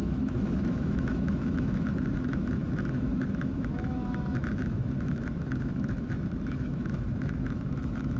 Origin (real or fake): fake